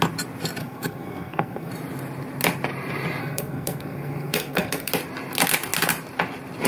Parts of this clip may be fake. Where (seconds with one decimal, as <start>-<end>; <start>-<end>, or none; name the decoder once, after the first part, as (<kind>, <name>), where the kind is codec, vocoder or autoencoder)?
0.6-1.7 (codec, SNAC); 3.2-4.9